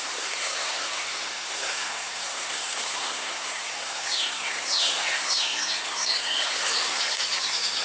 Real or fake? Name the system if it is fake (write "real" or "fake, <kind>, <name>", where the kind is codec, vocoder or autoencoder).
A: fake, codec, SNAC